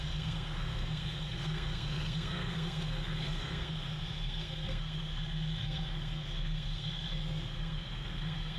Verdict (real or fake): fake